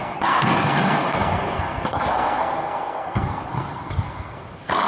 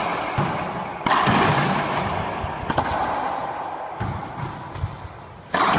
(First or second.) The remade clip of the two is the first